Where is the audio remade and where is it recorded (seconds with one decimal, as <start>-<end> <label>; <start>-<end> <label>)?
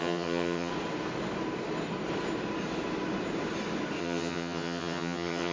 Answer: 0.0-0.7 remade; 0.7-4.0 recorded; 4.0-5.5 remade